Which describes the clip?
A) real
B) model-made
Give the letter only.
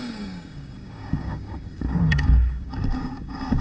B